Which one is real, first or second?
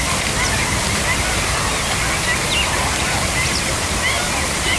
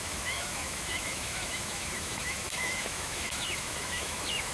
first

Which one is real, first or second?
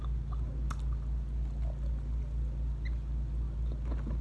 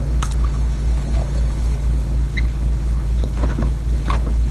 first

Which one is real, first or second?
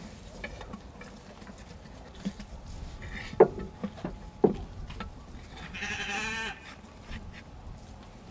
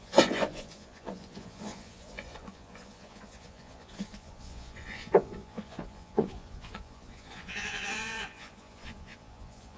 first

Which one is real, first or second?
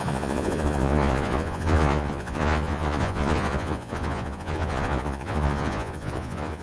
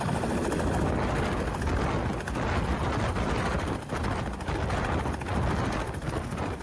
second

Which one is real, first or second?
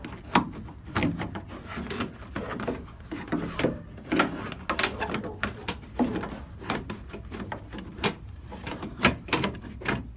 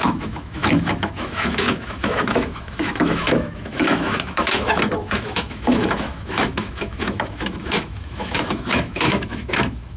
first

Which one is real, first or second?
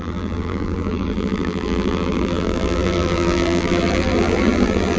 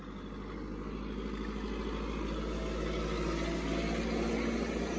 second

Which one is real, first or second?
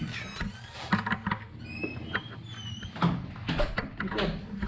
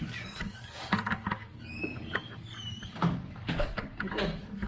first